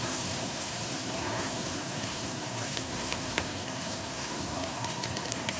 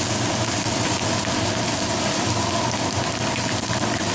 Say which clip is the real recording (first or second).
second